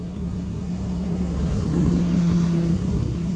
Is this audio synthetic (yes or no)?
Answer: yes